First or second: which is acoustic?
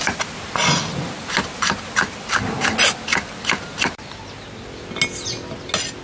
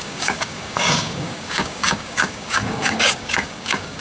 first